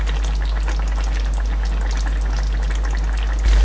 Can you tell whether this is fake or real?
real